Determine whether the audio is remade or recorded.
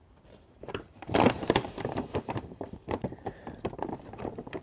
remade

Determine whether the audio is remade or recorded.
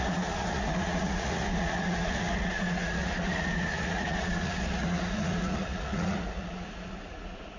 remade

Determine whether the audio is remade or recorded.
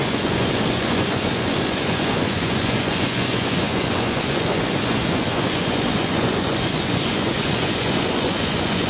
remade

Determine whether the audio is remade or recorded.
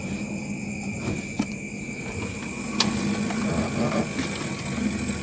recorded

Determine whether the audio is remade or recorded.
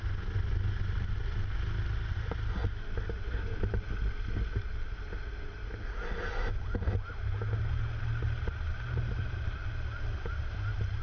recorded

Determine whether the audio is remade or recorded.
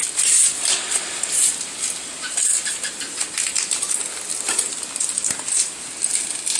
recorded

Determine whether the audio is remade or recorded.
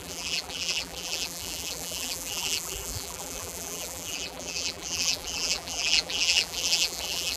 remade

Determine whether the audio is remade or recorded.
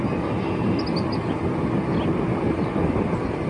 recorded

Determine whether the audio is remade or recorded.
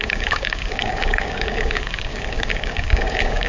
remade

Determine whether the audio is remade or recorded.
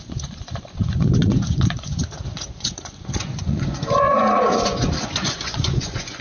remade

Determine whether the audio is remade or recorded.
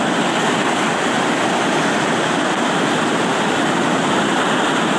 remade